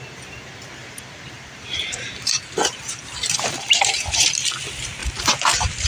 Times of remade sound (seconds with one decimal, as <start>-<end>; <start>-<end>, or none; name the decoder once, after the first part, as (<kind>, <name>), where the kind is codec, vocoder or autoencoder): 0.8-4.3 (vocoder, BigVGAN v2); 5.0-5.9